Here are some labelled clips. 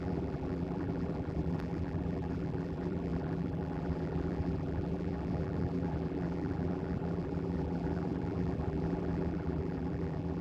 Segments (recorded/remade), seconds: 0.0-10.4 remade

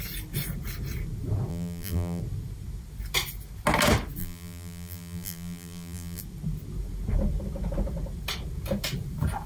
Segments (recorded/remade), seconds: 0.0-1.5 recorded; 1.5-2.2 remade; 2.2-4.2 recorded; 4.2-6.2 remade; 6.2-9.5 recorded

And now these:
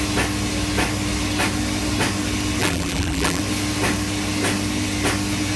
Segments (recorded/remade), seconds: 0.0-2.6 recorded; 2.6-3.4 remade; 3.4-5.6 recorded